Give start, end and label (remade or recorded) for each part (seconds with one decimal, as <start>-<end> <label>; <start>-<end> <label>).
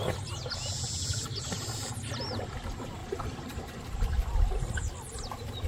0.0-1.1 recorded; 1.1-2.4 remade; 2.4-3.0 recorded; 3.0-4.9 remade; 4.9-5.7 recorded